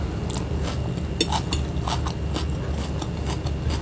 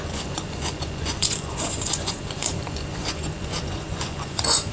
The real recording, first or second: first